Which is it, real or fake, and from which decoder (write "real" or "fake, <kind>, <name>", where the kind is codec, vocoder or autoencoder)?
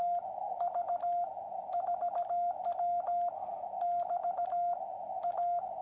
real